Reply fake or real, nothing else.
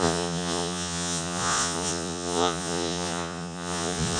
fake